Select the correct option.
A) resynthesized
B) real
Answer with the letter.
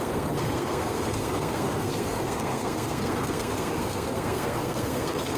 A